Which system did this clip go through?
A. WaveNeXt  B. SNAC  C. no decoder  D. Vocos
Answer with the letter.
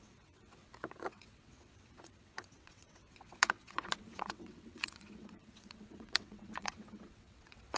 A